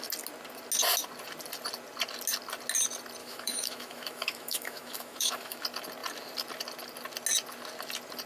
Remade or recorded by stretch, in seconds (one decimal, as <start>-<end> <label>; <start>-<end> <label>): 0.0-3.2 recorded; 3.2-5.6 remade; 5.6-8.3 recorded

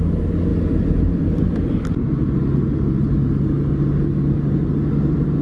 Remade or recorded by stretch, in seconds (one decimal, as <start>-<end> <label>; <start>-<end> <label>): 0.0-5.4 recorded

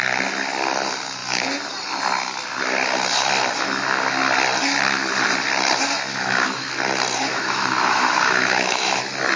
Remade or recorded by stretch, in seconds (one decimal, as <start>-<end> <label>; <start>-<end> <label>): 0.0-6.1 recorded; 6.1-6.7 remade; 6.7-7.3 recorded; 7.3-9.0 remade; 9.0-9.4 recorded

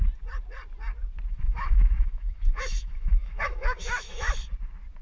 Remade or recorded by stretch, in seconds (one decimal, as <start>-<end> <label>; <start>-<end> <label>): 0.0-1.3 recorded; 1.3-4.3 remade; 4.3-5.0 recorded

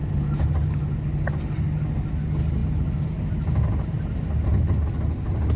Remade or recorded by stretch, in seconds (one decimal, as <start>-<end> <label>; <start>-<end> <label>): 0.0-5.6 recorded

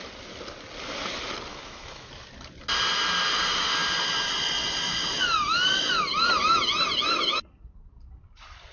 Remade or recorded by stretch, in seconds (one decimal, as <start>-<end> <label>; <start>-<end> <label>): 0.0-1.5 recorded; 1.5-2.1 remade; 2.1-8.7 recorded

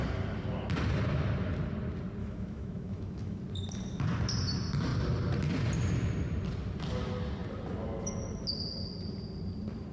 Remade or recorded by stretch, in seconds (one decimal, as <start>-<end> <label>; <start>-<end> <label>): 0.0-2.2 recorded; 2.2-3.4 remade; 3.4-9.9 recorded

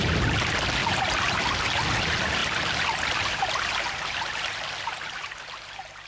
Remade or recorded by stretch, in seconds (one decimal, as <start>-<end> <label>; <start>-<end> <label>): 0.0-6.1 recorded